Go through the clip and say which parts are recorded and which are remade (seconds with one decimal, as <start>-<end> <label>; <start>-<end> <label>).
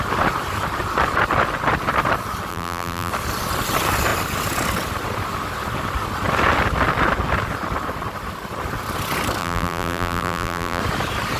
0.0-2.5 recorded; 2.5-3.1 remade; 3.1-9.4 recorded; 9.4-10.8 remade; 10.8-11.4 recorded